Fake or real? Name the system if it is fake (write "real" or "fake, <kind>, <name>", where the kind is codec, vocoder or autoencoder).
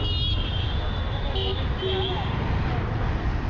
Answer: real